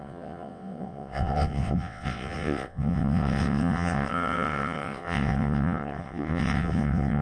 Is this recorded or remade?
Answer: remade